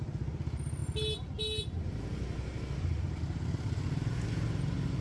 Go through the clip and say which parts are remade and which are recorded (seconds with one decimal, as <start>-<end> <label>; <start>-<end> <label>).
0.0-5.0 recorded